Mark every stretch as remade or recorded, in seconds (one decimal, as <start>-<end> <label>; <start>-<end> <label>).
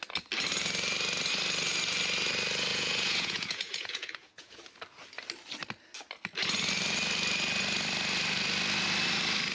0.0-2.7 recorded; 2.7-4.6 remade; 4.6-9.5 recorded